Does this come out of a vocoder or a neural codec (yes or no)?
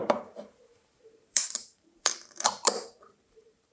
yes